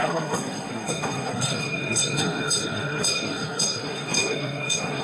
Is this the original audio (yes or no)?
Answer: no